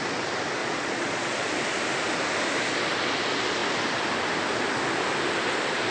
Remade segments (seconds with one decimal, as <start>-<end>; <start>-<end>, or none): 0.6-1.5